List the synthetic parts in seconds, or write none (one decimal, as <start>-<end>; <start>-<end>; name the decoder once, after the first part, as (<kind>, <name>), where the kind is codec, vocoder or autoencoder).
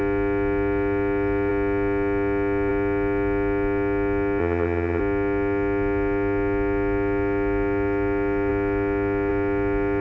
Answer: 4.4-5.0 (vocoder, HiFi-GAN)